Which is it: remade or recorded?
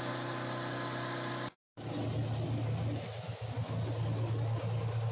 recorded